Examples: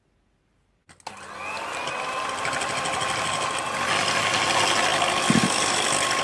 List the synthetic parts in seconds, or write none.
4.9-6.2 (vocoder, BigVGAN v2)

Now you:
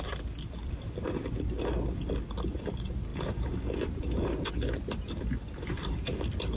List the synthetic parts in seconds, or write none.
none

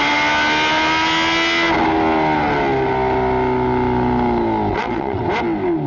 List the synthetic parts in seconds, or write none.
4.7-5.2 (vocoder, WaveNeXt)

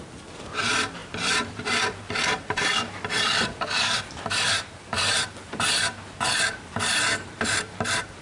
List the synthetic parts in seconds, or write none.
0.0-8.2 (vocoder, BigVGAN v2)